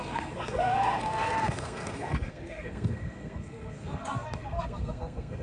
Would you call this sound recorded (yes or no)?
no